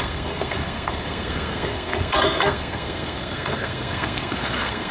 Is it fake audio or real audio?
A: fake